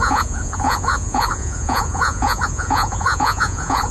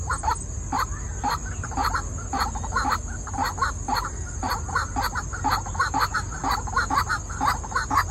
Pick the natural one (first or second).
second